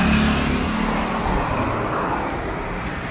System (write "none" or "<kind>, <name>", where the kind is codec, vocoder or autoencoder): none